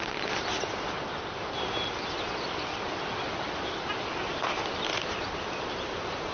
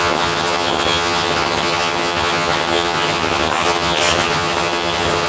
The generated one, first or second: second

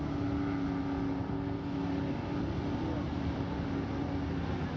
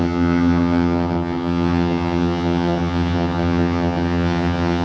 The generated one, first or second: second